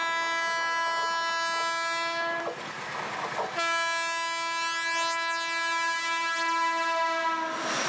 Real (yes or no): yes